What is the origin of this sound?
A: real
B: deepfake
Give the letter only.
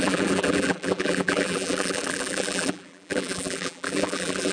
B